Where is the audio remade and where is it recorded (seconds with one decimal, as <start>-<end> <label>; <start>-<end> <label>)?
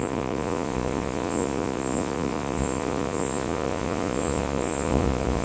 0.0-5.4 remade